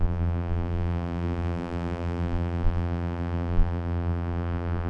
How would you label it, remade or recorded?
remade